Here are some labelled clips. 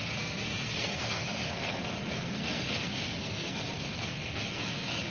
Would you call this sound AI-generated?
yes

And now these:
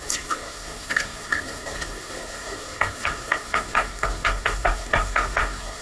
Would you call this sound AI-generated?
yes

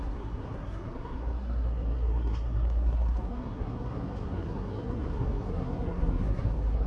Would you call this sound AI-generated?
yes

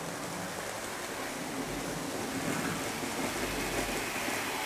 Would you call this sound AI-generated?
no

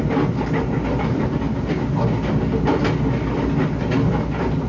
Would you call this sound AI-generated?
no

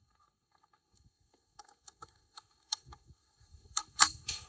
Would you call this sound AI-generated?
yes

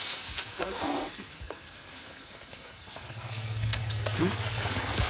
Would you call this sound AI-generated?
yes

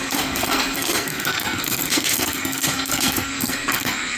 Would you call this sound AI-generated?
yes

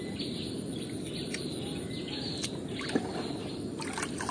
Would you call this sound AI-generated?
no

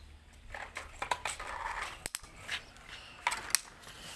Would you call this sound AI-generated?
no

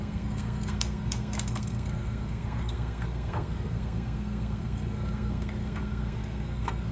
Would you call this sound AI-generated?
yes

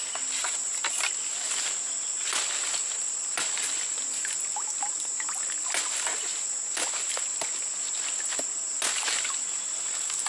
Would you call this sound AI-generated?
no